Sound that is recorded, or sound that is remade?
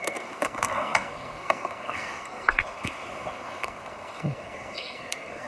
remade